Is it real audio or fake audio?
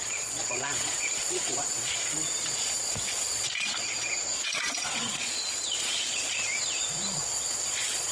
fake